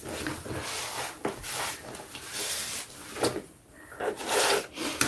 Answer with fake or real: real